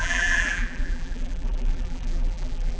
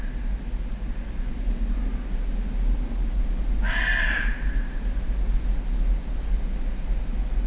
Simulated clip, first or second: first